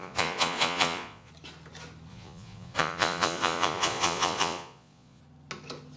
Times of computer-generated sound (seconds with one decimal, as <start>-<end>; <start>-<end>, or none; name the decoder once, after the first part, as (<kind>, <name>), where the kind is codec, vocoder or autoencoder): 0.0-1.3 (vocoder, Vocos); 2.1-5.2